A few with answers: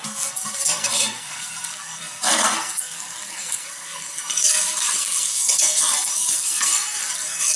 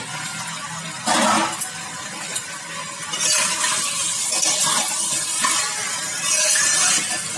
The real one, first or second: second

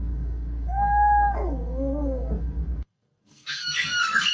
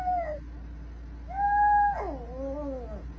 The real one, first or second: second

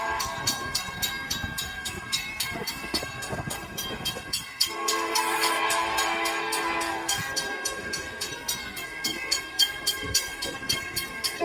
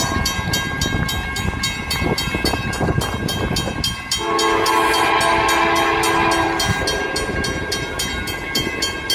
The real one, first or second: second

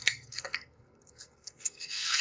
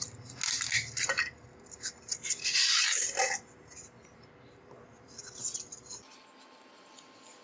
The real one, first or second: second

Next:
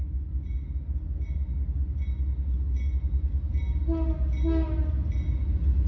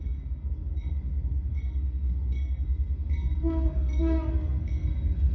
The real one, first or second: first